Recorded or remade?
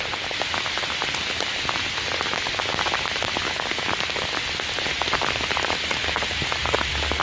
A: recorded